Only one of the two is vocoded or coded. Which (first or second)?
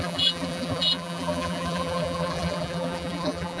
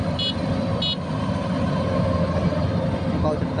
first